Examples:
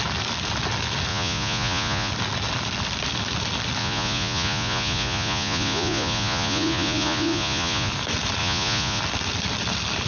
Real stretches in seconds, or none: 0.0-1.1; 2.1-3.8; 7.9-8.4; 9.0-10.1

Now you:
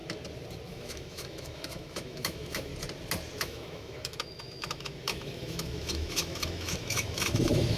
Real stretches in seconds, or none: 0.0-0.7; 2.7-3.4